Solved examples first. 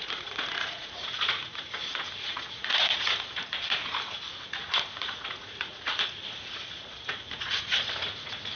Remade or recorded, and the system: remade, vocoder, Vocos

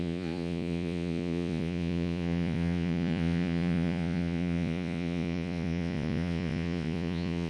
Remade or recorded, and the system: remade, vocoder, Vocos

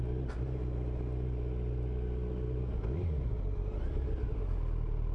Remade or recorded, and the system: recorded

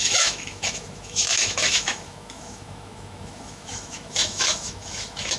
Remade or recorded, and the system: remade, autoencoder, DAC-VAE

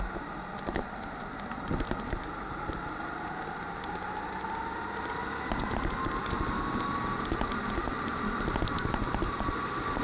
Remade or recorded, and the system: recorded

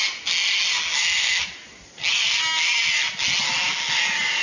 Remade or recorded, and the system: recorded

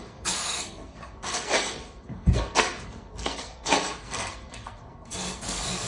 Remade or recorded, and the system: remade, codec, SNAC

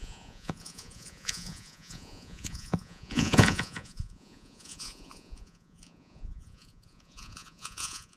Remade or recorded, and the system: remade, vocoder, Vocos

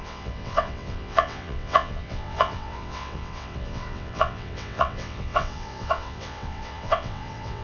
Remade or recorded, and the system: remade, vocoder, WaveNeXt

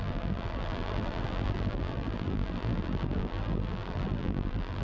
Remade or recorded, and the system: remade, vocoder, BigVGAN v2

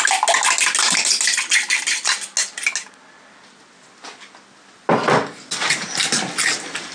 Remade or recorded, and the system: recorded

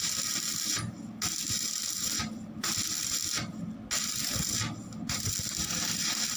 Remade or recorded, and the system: recorded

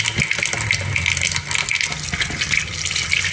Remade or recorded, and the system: recorded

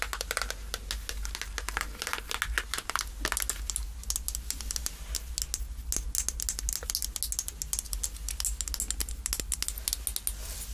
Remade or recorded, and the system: recorded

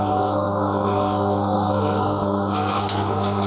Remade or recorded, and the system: remade, codec, SNAC